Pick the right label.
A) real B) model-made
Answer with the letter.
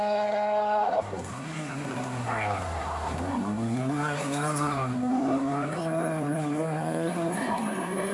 B